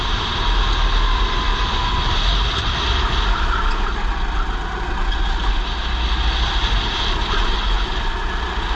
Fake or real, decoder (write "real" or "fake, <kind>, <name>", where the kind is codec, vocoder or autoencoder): real